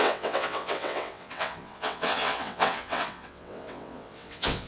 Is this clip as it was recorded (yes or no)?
no